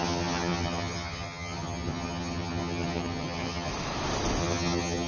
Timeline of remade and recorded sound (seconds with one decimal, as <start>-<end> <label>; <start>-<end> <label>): 0.0-3.7 remade; 3.7-4.4 recorded; 4.4-5.1 remade